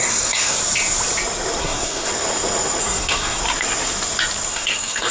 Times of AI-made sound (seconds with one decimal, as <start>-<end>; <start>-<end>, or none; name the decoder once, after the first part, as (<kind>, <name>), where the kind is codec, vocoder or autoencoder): 0.0-0.6 (codec, SNAC); 1.6-2.1; 2.8-3.4; 4.5-5.1